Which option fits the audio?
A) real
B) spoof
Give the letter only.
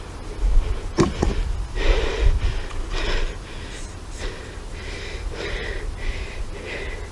A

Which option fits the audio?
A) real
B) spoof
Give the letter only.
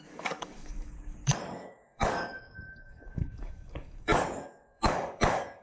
B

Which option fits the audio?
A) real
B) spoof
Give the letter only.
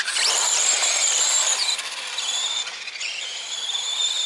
B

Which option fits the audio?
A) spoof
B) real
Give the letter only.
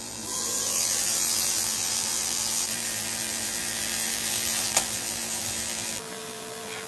A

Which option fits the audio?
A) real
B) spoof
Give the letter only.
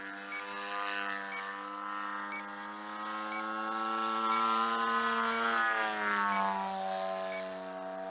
A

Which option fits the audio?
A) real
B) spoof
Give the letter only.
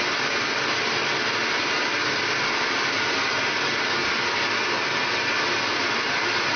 A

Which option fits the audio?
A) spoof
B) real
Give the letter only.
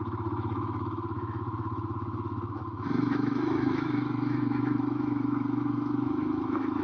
A